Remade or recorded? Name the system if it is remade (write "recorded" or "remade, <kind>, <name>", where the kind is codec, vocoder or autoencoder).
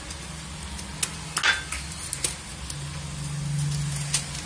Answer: recorded